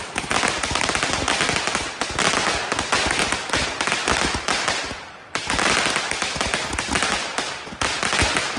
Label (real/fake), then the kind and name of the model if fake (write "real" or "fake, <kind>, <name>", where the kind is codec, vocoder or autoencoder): real